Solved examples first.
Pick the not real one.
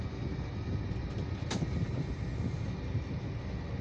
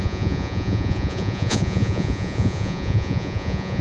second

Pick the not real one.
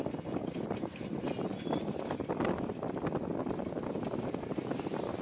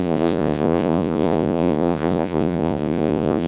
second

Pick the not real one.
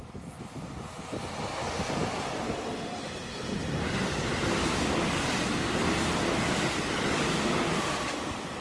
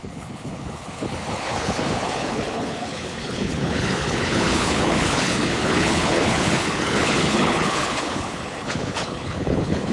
second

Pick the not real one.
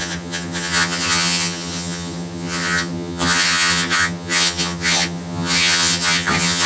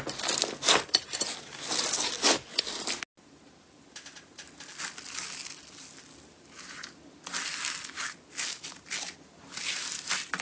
first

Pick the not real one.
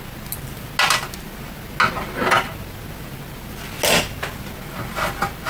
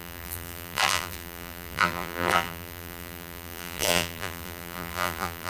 second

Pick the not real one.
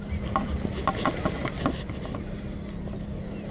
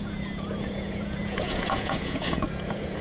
second